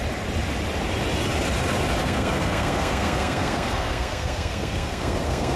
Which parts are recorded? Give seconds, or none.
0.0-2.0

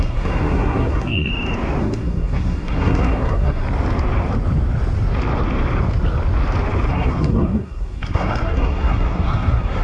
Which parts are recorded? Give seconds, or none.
1.3-1.8; 3.6-6.9

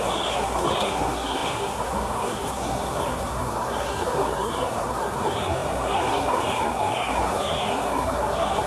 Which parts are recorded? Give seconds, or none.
none

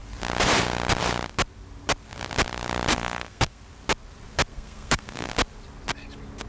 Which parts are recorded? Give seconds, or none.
0.0-2.9; 3.6-4.5; 5.3-6.5